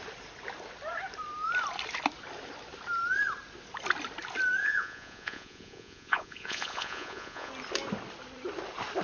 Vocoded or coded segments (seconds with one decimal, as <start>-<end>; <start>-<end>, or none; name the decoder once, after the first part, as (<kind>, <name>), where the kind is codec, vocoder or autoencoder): 4.6-7.5 (vocoder, Vocos)